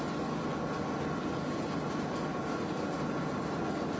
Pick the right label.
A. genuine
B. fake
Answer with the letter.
A